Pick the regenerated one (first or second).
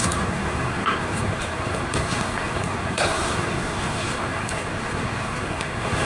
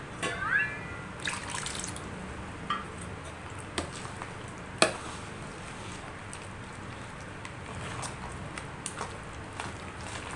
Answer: first